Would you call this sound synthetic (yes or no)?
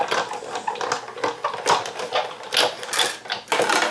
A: no